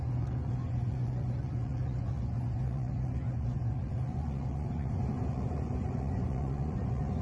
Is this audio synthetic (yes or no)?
yes